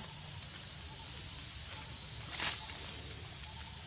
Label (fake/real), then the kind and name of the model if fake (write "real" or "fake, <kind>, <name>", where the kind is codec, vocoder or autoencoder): real